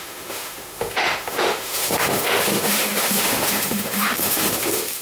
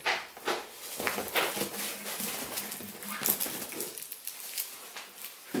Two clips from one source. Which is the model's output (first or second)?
first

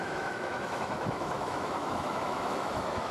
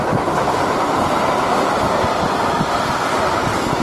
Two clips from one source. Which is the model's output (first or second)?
first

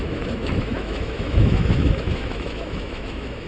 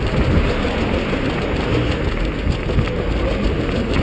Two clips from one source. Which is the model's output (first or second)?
first